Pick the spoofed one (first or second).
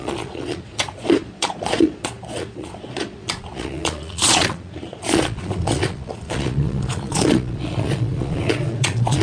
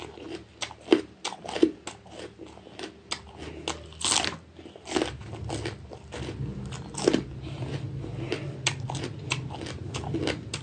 first